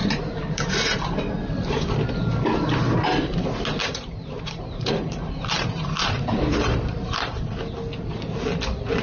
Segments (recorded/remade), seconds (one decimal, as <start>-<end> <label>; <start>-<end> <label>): 0.0-0.7 remade; 0.7-3.8 recorded; 3.8-7.5 remade; 7.5-9.0 recorded